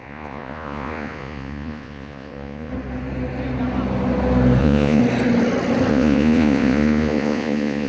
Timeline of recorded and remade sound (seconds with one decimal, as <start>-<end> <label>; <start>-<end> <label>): 0.0-2.7 remade; 2.7-4.6 recorded; 4.6-5.0 remade; 5.0-5.9 recorded; 5.9-7.9 remade